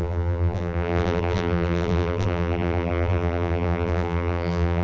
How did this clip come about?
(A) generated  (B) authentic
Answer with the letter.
A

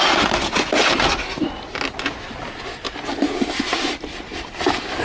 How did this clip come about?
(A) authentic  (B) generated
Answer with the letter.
A